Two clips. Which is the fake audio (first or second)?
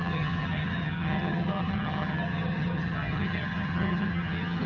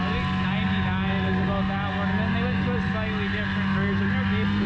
first